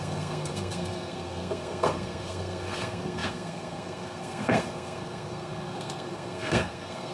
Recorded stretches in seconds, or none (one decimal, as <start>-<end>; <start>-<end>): none